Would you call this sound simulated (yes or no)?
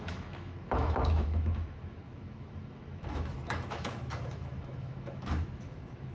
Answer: yes